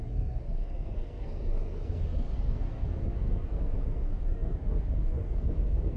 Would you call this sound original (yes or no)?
no